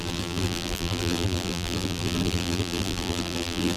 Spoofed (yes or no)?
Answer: yes